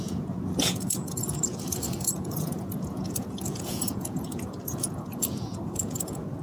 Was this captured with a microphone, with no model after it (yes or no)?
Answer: no